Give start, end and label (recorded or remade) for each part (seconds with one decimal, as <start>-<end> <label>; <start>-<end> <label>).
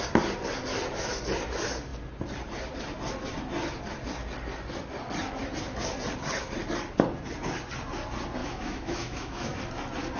0.0-8.4 recorded; 8.4-9.6 remade; 9.6-10.2 recorded